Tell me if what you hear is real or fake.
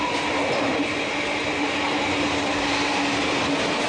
real